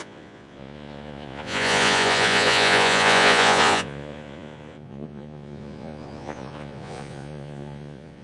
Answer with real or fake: fake